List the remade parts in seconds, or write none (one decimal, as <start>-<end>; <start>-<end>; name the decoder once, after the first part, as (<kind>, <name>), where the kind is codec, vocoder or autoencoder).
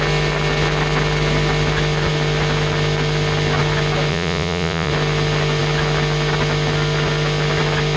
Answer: 4.1-4.9 (vocoder, Vocos)